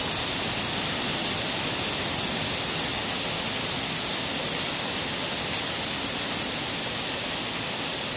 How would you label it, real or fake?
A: real